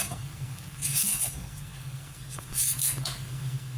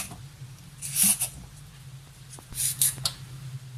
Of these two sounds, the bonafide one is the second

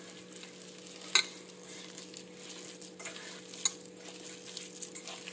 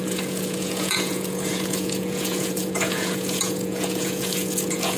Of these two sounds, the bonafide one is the first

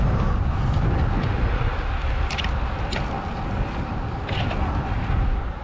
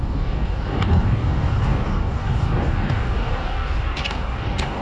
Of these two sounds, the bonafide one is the first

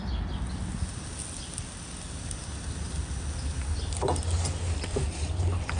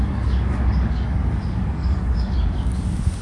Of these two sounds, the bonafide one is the first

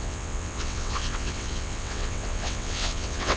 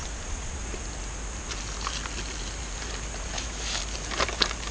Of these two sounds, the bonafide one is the second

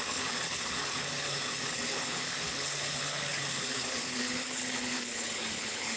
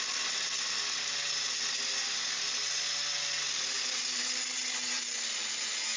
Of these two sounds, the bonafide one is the second